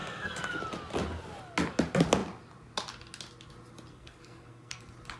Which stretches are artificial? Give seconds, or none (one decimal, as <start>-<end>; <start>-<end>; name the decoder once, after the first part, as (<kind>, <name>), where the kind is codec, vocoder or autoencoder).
0.0-0.6 (codec, SNAC); 3.9-4.8